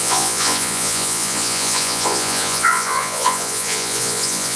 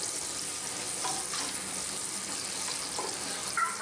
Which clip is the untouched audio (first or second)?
second